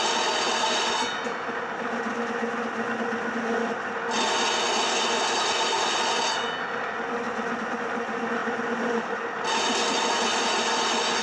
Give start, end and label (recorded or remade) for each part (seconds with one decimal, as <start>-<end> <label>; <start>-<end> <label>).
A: 0.0-8.4 recorded; 8.4-9.7 remade; 9.7-11.2 recorded